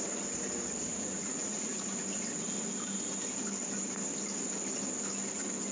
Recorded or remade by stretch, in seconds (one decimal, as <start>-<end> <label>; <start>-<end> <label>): 0.0-0.9 recorded; 0.9-1.8 remade; 1.8-5.7 recorded